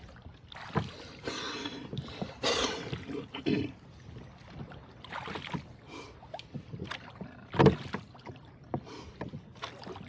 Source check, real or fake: real